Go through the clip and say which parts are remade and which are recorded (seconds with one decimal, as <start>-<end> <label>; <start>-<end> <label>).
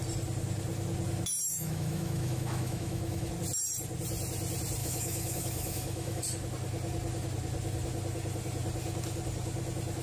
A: 0.0-1.5 recorded; 1.5-3.3 remade; 3.3-4.8 recorded; 4.8-6.2 remade; 6.2-10.0 recorded